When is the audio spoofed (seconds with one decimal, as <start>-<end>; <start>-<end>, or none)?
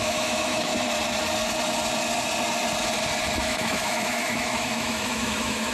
0.0-0.7; 3.4-5.7